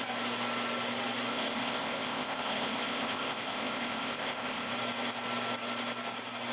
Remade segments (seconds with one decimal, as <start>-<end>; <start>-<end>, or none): 1.3-4.7